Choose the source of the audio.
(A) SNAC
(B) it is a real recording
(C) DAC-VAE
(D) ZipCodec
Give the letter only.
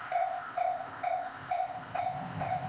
D